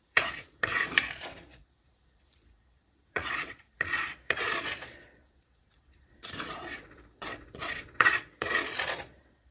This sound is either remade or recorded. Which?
remade